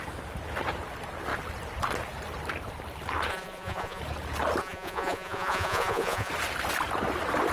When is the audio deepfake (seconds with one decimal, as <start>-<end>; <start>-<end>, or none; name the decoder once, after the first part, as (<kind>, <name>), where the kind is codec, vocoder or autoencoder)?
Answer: 3.3-4.0 (vocoder, Vocos); 4.6-6.3